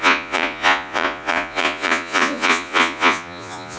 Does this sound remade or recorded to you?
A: remade